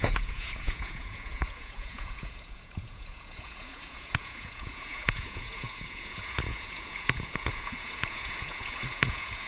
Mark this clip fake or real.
fake